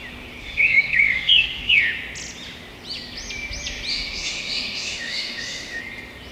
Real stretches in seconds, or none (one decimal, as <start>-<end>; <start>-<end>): 0.0-0.4; 1.8-3.9; 5.8-6.3